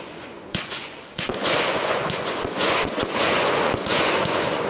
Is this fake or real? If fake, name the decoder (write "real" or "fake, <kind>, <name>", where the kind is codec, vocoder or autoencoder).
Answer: fake, vocoder, Vocos